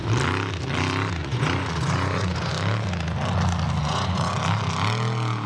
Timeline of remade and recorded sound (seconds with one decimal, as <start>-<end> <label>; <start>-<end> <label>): 0.0-1.2 recorded; 1.2-2.5 remade; 2.5-3.8 recorded; 3.8-4.3 remade; 4.3-5.5 recorded